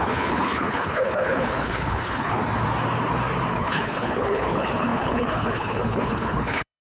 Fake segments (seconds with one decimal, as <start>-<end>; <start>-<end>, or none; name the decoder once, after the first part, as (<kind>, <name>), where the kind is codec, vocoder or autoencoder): 0.0-2.4 (codec, HILCodec); 3.5-6.8